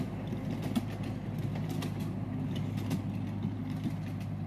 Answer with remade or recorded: recorded